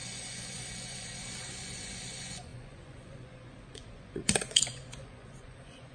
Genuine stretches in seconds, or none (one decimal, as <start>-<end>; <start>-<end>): none